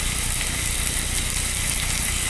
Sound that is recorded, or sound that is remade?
recorded